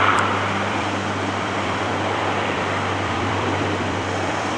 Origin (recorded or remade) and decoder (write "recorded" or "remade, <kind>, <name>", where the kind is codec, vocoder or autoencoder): remade, vocoder, BigVGAN v2